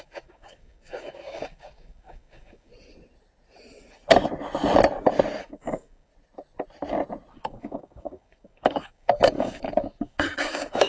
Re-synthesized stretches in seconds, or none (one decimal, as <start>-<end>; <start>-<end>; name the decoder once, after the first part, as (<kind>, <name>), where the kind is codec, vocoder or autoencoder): 0.0-2.7 (codec, DAC); 5.4-6.1; 7.3-10.9